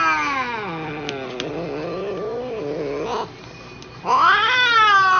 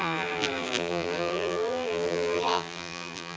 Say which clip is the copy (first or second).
second